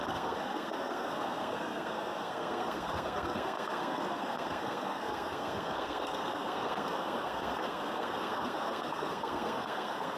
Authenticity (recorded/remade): remade